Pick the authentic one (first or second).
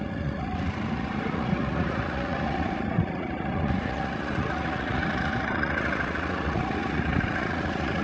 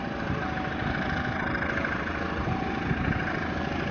second